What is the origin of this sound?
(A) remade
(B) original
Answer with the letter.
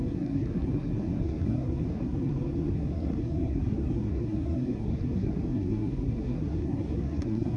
A